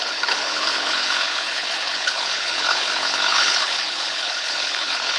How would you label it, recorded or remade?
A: remade